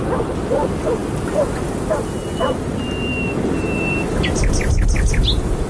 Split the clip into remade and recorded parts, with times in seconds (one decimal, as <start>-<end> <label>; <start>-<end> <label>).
0.0-5.7 recorded